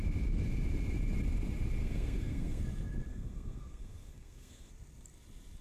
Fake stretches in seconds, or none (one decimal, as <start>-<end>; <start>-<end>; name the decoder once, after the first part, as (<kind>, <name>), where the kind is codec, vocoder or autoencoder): 1.8-2.6 (codec, SNAC); 3.1-4.7